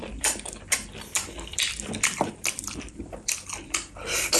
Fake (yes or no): yes